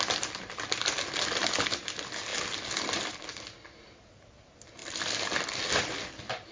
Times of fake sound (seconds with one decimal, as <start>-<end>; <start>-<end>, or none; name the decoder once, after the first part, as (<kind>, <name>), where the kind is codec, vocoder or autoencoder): none